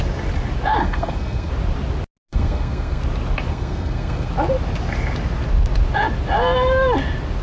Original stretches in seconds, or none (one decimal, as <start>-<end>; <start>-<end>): 0.0-0.8; 1.5-2.3; 3.0-3.5; 4.3-7.4